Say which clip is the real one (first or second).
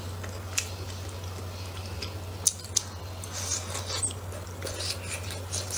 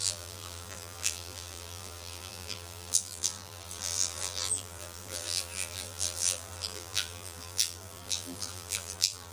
first